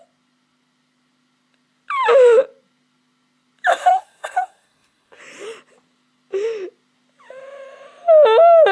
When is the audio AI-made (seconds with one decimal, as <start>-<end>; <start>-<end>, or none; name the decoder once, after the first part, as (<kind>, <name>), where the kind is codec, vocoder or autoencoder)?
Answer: 3.7-5.2 (codec, SNAC)